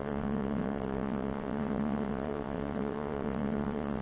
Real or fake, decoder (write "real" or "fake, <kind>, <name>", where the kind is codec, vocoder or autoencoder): fake, vocoder, WaveNeXt